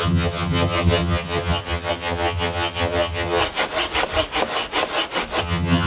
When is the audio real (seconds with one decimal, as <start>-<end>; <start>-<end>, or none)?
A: 3.4-5.4